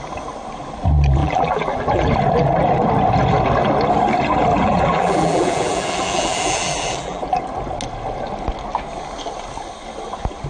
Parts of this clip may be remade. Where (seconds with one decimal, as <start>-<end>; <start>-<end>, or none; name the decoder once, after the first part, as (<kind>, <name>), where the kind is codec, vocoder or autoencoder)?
1.2-2.1 (vocoder, BigVGAN v2); 4.5-7.4

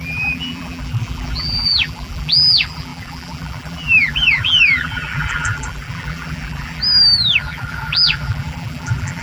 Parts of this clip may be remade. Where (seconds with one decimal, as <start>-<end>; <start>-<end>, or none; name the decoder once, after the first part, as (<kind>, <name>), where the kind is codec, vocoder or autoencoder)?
0.0-6.8 (vocoder, BigVGAN v2); 7.4-9.2

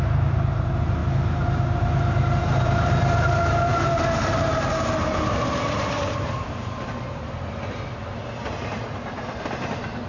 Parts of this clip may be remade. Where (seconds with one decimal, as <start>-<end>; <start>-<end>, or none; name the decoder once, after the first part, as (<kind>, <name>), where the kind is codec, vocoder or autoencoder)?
0.0-1.0 (vocoder, BigVGAN v2); 2.4-8.2

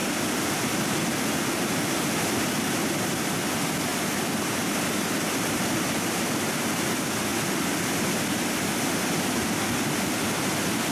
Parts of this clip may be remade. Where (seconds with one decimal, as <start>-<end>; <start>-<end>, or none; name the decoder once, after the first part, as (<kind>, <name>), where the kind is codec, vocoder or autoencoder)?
3.9-5.5 (vocoder, BigVGAN v2)